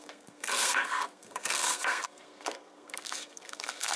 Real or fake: fake